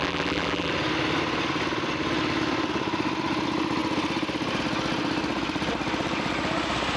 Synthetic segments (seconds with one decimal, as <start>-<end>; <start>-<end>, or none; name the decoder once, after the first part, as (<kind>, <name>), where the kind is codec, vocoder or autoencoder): 0.0-0.7 (vocoder, BigVGAN v2)